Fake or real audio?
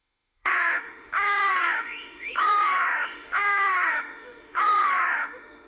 fake